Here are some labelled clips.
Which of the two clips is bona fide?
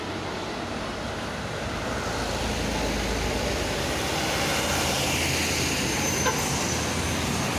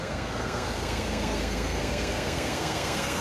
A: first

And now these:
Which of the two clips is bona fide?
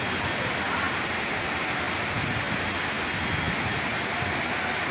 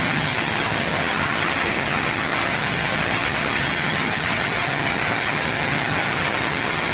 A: first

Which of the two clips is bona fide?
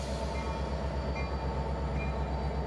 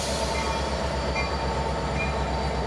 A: first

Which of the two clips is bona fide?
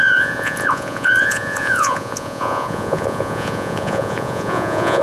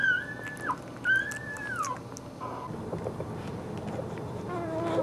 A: second